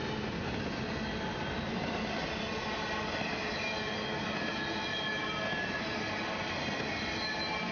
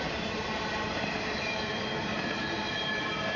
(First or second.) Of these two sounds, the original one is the first